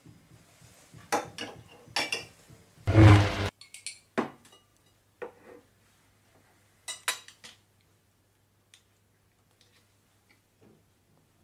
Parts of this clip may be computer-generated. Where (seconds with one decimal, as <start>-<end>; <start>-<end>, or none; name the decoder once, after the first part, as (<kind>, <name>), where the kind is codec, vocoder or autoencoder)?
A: none